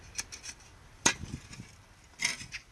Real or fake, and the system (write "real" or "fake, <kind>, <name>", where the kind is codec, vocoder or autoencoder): real